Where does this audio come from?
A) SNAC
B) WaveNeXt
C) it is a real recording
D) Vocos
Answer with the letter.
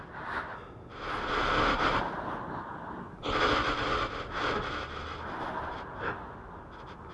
C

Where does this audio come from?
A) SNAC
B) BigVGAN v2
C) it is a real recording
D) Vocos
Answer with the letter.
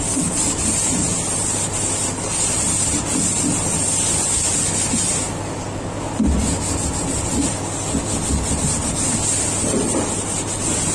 C